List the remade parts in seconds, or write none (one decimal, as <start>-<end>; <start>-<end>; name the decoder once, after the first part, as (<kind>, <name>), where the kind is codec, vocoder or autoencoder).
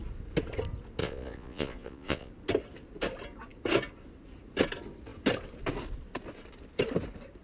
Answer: 1.0-2.3 (vocoder, Vocos)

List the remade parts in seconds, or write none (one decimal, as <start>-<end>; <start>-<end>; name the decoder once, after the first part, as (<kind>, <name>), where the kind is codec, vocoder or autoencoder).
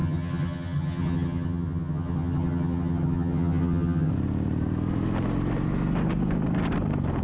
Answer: 0.0-4.1 (vocoder, HiFi-GAN)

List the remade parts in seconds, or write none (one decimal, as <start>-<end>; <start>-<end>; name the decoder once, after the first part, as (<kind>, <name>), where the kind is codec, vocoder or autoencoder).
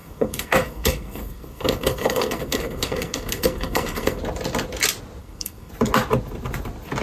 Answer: 0.0-4.2 (codec, SNAC); 5.2-5.7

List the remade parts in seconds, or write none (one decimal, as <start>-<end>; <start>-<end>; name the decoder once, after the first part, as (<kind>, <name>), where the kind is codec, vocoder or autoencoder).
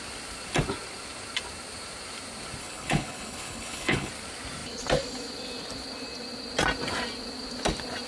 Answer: 2.6-4.1 (codec, HILCodec)